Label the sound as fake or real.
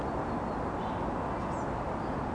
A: real